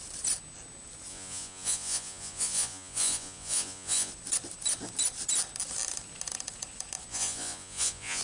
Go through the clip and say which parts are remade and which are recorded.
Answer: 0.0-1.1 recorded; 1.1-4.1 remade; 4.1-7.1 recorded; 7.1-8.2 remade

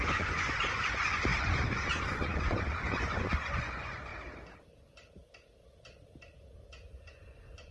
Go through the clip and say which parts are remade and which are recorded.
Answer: 0.0-4.1 remade; 4.1-6.9 recorded; 6.9-7.7 remade

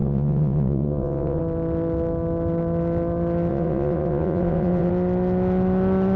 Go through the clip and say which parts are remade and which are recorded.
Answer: 0.0-1.4 remade; 1.4-3.5 recorded; 3.5-4.9 remade; 4.9-6.2 recorded

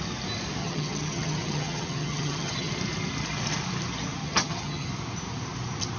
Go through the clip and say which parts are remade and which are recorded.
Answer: 0.0-0.6 recorded; 0.6-2.7 remade; 2.7-4.2 recorded; 4.2-4.9 remade; 4.9-6.0 recorded

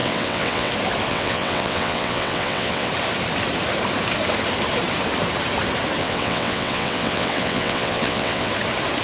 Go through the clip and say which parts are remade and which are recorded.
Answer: 0.0-0.7 remade; 0.7-1.1 recorded; 1.1-2.9 remade; 2.9-6.0 recorded; 6.0-8.5 remade; 8.5-9.0 recorded

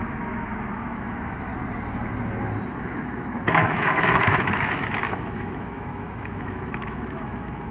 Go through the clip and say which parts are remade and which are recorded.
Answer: 0.0-1.5 remade; 1.5-2.8 recorded; 2.8-7.7 remade